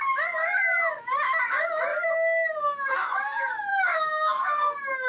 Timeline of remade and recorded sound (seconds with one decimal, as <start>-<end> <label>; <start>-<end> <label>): 0.0-0.4 recorded; 0.4-1.4 remade; 1.4-1.9 recorded; 1.9-5.1 remade